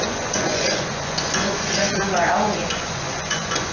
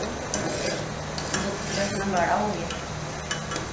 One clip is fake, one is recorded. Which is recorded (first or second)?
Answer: second